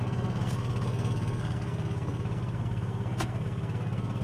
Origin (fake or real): fake